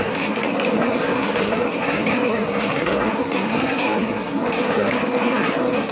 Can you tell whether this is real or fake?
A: fake